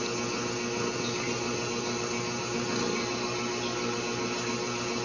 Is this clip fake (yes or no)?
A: no